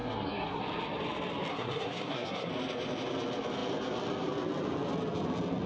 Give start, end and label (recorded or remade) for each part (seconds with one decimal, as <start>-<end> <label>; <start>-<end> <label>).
0.0-0.6 remade; 0.6-1.5 recorded; 1.5-2.5 remade; 2.5-5.7 recorded